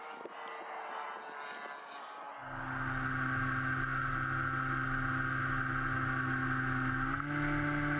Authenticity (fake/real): real